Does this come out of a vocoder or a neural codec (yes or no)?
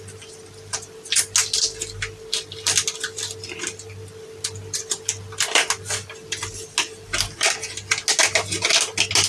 no